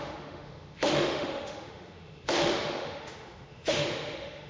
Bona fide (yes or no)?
no